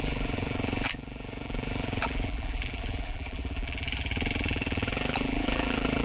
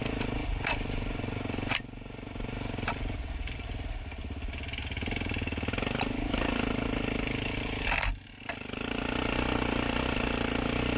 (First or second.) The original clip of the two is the second